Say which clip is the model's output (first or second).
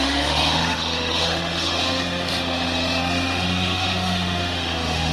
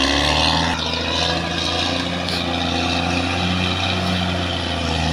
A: first